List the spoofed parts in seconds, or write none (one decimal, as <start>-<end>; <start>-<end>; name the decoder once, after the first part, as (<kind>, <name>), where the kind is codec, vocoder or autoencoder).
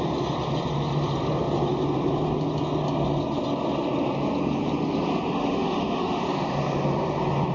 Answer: 5.3-6.2 (autoencoder, DAC-VAE)